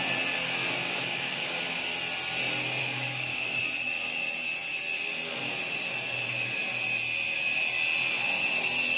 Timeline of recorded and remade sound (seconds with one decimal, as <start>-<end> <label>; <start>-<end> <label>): 0.0-0.8 recorded; 0.8-1.6 remade; 1.6-2.8 recorded; 2.8-3.6 remade; 3.6-9.0 recorded